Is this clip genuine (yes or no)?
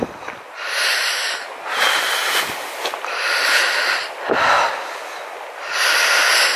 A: yes